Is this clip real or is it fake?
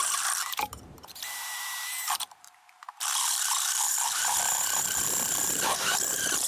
fake